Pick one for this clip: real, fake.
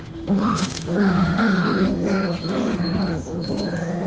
fake